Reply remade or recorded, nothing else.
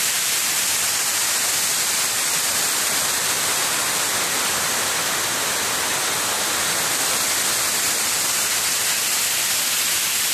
recorded